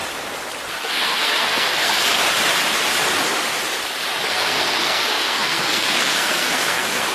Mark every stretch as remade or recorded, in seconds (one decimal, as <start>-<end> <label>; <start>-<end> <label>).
0.0-0.7 recorded; 0.7-2.2 remade; 2.2-4.3 recorded; 4.3-7.1 remade